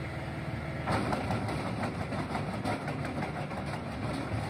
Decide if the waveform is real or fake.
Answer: real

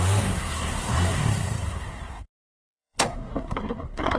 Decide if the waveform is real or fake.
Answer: fake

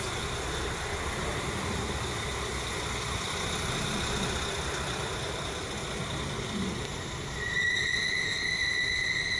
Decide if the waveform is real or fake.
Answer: real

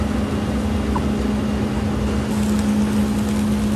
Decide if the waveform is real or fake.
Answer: real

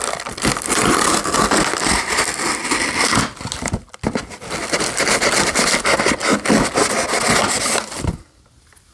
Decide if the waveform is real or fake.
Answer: real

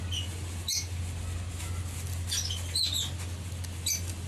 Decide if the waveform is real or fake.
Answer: real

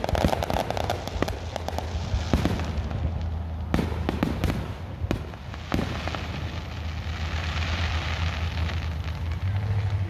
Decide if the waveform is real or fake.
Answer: real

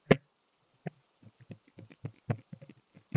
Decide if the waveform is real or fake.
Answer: real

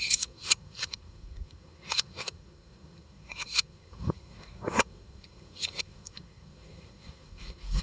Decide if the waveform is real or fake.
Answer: fake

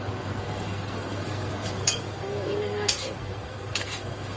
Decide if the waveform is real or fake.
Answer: fake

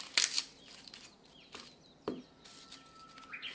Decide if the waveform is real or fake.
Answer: real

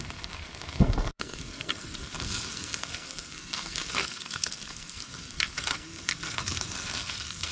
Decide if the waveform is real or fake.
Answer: fake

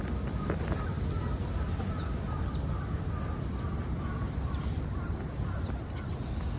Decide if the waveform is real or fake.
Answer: real